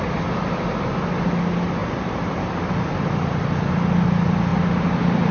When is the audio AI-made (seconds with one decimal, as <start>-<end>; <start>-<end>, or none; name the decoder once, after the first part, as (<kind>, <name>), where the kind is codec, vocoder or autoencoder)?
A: none